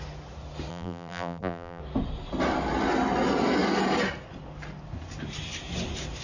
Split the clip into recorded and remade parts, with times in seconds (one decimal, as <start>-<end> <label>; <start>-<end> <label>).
0.0-0.7 recorded; 0.7-1.8 remade; 1.8-6.2 recorded